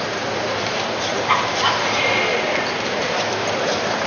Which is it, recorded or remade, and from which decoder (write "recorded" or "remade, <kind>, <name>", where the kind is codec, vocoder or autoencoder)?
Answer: remade, vocoder, BigVGAN v2